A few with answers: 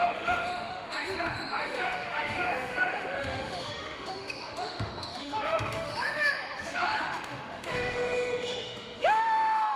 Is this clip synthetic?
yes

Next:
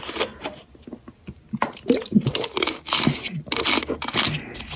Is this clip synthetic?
no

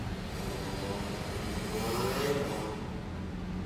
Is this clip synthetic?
no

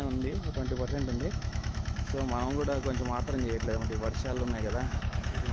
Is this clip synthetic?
yes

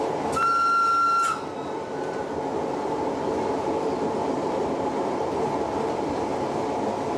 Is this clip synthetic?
no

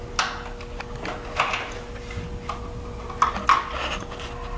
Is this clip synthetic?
no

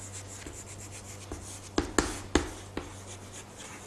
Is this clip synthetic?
no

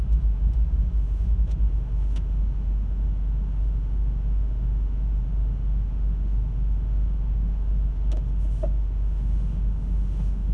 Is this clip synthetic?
yes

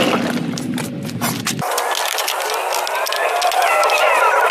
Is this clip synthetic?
no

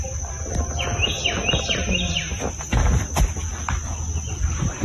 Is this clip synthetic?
no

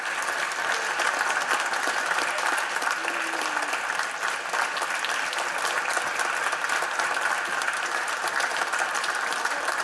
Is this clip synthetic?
no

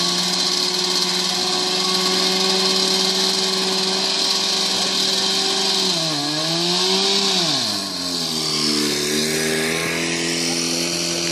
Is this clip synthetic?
no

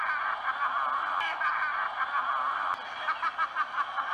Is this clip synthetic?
no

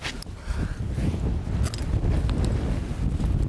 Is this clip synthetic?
no